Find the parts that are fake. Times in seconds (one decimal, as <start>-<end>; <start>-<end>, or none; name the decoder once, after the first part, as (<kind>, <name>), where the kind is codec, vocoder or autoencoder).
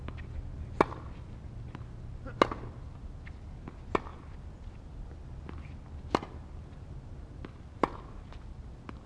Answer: none